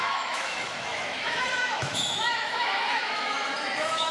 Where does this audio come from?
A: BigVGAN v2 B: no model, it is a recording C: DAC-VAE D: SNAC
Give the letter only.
C